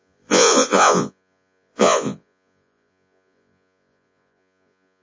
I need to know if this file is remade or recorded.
remade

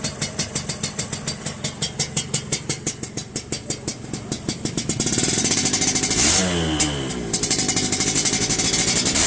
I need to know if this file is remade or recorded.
recorded